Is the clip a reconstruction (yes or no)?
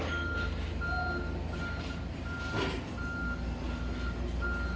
no